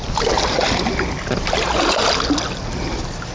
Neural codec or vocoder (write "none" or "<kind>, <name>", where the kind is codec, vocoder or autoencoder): none